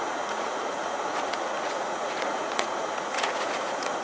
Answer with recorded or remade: remade